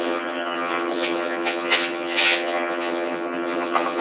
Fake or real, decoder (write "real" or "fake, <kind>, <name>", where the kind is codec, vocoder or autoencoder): fake, vocoder, HiFi-GAN